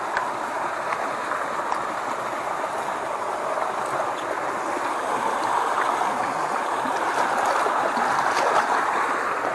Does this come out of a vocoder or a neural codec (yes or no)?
no